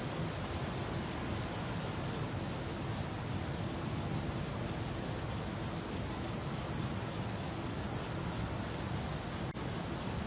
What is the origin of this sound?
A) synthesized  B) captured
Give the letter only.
B